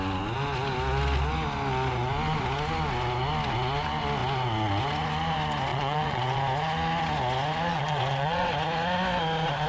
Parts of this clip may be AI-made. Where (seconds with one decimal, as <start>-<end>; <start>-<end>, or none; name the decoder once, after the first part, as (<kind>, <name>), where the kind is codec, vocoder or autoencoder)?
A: 5.7-6.4 (vocoder, WaveNeXt); 7.7-8.5

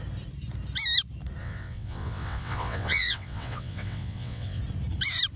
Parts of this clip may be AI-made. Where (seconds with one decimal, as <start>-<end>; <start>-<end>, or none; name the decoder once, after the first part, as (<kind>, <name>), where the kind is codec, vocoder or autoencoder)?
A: 1.4-4.6 (vocoder, WaveNeXt)